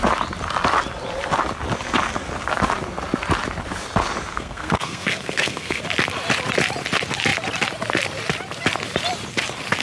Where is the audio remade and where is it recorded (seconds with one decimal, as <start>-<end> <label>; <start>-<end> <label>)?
0.0-4.3 recorded; 4.3-5.8 remade; 5.8-9.8 recorded